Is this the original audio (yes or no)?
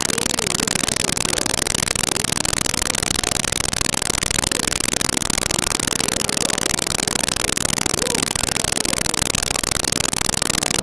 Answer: yes